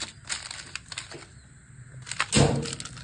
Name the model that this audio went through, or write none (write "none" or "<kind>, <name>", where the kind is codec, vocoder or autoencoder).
none